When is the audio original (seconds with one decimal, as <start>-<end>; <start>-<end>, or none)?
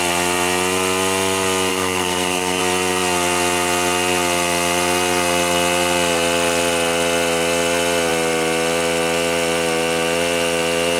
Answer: 0.0-1.7; 2.6-11.0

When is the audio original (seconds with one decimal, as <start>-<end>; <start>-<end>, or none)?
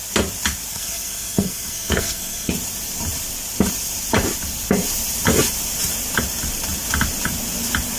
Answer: 0.0-0.7; 2.5-8.0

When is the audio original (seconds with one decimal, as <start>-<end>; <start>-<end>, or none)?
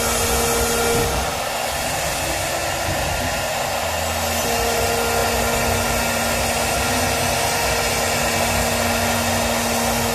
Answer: 0.0-10.1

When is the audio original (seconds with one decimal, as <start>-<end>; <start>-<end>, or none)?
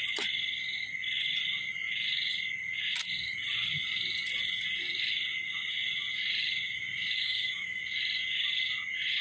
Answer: 0.0-7.2; 7.8-9.2